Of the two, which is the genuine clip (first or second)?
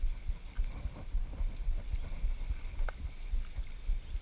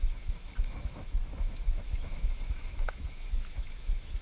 first